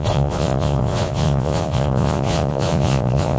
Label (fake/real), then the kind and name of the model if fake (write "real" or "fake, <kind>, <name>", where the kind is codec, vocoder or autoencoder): fake, vocoder, Vocos